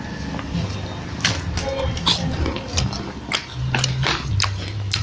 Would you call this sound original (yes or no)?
yes